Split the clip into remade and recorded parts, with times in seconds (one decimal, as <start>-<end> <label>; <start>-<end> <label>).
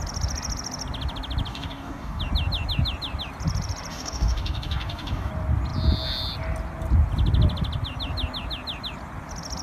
0.0-1.5 recorded; 1.5-2.2 remade; 2.2-3.9 recorded; 3.9-5.3 remade; 5.3-9.6 recorded